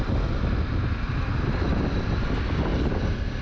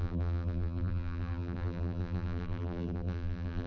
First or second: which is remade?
second